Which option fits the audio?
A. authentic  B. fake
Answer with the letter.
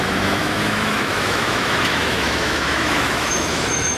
B